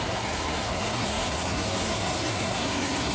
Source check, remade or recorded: remade